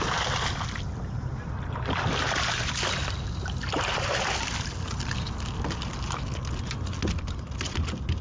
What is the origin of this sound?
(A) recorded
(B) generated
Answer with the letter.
A